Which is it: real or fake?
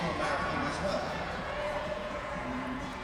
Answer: fake